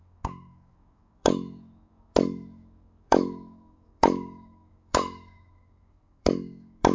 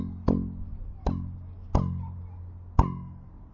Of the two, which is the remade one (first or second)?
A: first